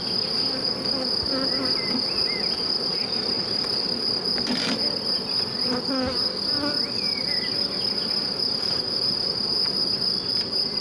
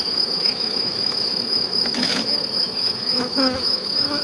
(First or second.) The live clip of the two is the first